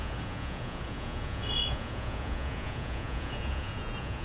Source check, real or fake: fake